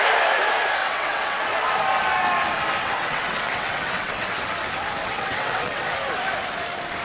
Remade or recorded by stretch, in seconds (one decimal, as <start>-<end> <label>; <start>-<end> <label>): 0.0-0.8 recorded; 0.8-1.5 remade; 1.5-2.8 recorded; 2.8-4.5 remade; 4.5-5.0 recorded; 5.0-5.8 remade; 5.8-7.0 recorded